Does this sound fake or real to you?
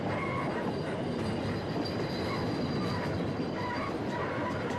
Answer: real